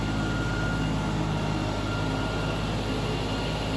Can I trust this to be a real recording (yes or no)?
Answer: yes